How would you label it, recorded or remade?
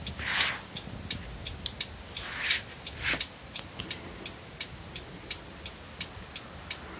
recorded